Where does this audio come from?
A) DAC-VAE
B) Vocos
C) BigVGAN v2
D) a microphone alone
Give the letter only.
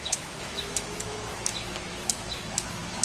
A